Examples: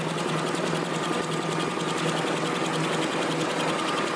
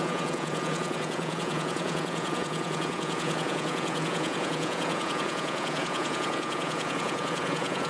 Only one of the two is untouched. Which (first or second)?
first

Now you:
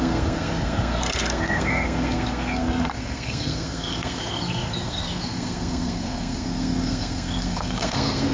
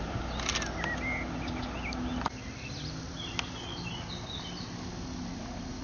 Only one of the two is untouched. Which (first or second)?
second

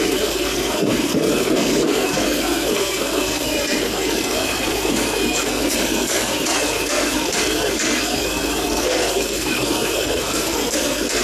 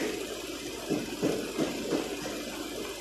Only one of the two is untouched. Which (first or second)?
second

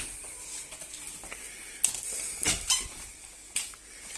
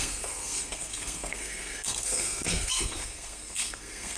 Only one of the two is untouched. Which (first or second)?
first